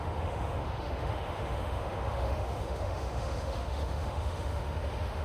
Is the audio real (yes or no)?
no